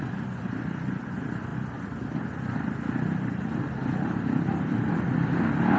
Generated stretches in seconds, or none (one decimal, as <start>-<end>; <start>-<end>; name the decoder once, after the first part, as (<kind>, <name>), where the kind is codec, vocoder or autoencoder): none